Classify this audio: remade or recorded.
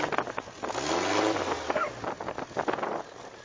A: recorded